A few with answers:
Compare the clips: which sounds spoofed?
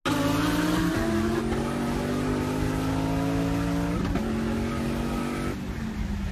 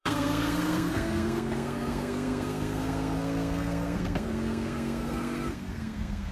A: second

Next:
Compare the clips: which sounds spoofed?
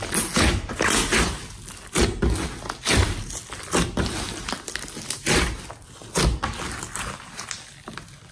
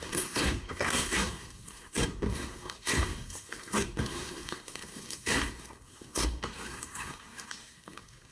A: second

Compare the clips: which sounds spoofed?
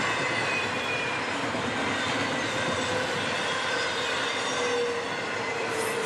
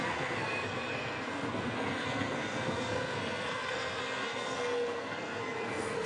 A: second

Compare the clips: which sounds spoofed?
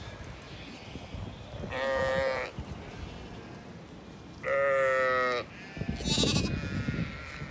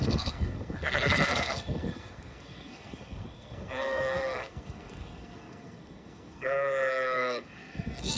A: second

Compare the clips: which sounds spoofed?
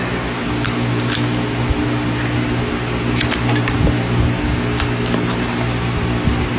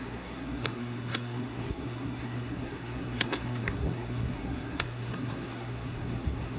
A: second